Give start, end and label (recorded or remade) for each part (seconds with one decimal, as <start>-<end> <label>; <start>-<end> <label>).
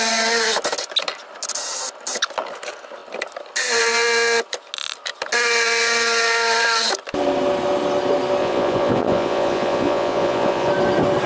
0.0-8.4 recorded; 8.4-10.7 remade; 10.7-11.3 recorded